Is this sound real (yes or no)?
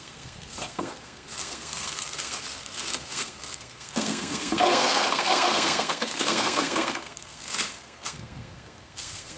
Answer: no